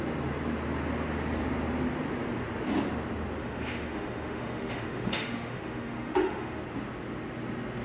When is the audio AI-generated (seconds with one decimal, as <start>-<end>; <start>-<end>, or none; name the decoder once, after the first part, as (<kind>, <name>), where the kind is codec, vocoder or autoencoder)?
3.4-6.6 (autoencoder, DAC-VAE)